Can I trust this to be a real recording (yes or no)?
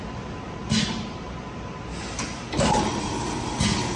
yes